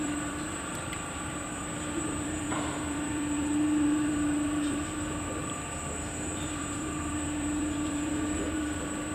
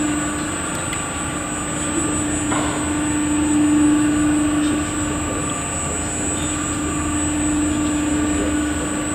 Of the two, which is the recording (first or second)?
second